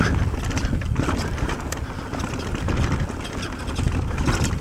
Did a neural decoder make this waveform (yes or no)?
no